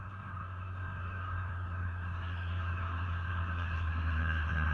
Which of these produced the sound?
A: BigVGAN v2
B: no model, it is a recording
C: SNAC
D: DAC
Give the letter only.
C